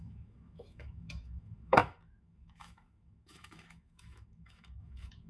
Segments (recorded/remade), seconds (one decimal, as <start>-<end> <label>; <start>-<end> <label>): 0.0-5.3 remade